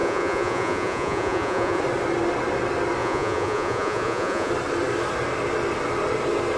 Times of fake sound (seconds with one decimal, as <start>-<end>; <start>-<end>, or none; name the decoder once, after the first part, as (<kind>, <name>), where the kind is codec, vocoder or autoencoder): 0.0-1.8 (vocoder, Vocos); 3.0-4.5